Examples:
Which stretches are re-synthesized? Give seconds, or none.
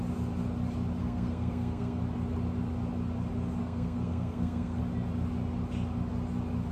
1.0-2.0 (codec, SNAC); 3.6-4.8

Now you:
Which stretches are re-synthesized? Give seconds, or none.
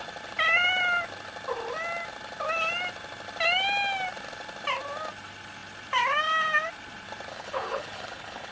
7.3-8.5 (codec, HILCodec)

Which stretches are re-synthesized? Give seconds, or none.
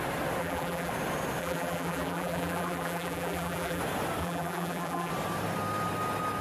0.4-0.9 (vocoder, BigVGAN v2); 1.4-3.8; 4.2-5.1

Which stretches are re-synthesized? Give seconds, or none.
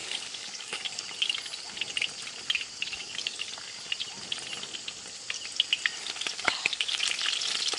0.0-1.0 (codec, DAC); 3.0-3.5; 6.3-7.0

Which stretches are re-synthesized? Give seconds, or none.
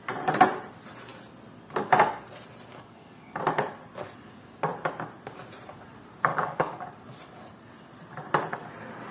2.7-3.4 (codec, DAC); 6.3-6.8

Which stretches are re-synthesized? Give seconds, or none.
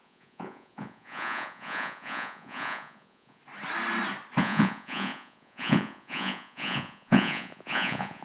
0.0-3.4 (vocoder, Vocos); 4.4-8.2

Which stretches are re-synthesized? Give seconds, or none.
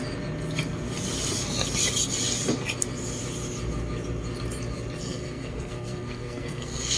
5.0-7.0 (codec, SNAC)